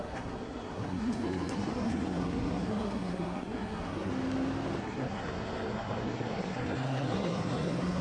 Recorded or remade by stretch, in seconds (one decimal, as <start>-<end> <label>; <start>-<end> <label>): 0.0-4.1 remade; 4.1-4.8 recorded; 4.8-8.0 remade

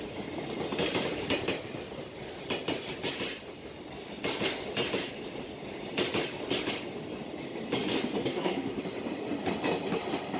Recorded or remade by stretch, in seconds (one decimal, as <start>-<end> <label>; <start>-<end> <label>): 0.0-8.2 recorded; 8.2-8.8 remade; 8.8-10.4 recorded